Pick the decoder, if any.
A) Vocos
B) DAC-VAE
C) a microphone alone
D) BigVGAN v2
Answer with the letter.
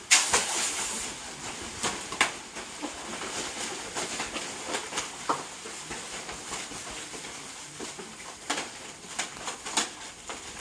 C